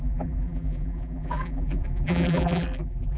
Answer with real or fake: fake